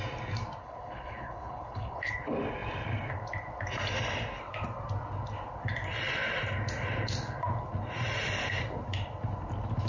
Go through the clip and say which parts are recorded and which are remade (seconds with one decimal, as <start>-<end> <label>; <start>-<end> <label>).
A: 0.0-0.6 recorded; 0.6-2.1 remade; 2.1-9.9 recorded